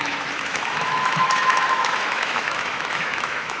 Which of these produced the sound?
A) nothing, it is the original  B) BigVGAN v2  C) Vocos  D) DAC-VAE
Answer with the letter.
D